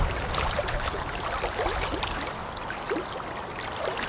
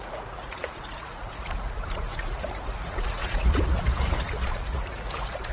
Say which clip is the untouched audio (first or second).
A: first